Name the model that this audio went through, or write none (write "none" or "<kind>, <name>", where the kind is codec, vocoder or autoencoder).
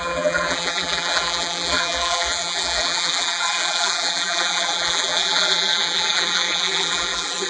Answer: vocoder, BigVGAN v2